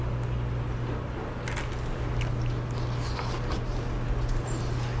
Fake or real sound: real